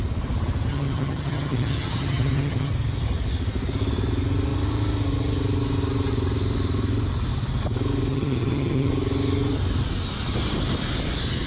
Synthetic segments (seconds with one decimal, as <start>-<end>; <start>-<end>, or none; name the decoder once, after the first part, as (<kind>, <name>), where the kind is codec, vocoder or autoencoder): 0.7-2.7 (vocoder, HiFi-GAN); 8.1-8.9